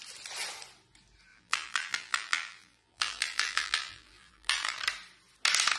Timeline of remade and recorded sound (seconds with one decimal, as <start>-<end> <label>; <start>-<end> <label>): 0.0-1.3 recorded; 1.3-4.8 remade; 4.8-5.8 recorded